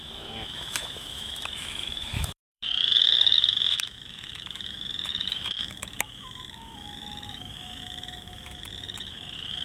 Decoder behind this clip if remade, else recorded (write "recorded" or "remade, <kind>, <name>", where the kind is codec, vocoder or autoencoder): remade, autoencoder, DAC-VAE